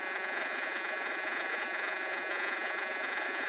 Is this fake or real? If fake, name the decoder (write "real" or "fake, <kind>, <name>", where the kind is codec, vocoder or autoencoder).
fake, vocoder, Vocos